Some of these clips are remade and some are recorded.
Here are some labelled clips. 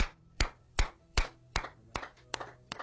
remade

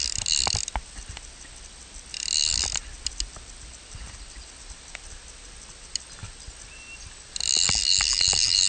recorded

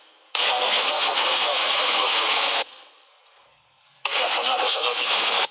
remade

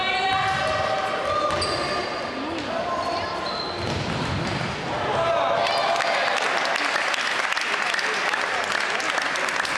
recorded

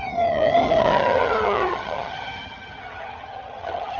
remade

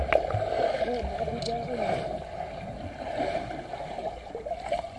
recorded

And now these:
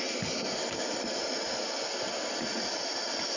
recorded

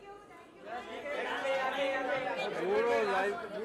recorded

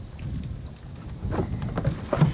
recorded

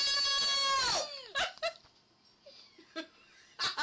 recorded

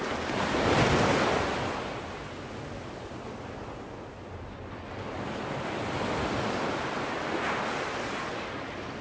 recorded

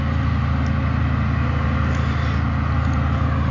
recorded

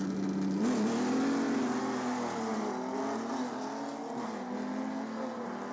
recorded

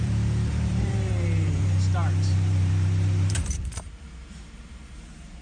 remade